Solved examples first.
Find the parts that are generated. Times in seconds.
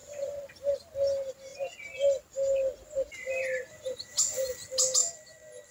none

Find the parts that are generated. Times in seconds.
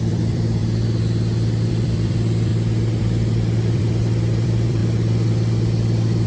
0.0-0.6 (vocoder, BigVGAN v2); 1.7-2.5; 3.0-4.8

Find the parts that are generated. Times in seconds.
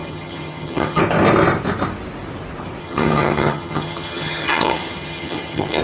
0.0-1.0 (vocoder, HiFi-GAN); 2.8-5.8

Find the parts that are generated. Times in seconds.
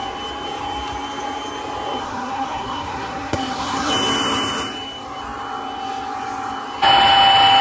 2.0-3.9 (codec, SNAC)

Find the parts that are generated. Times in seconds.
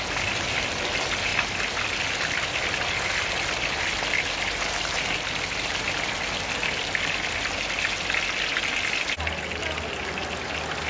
none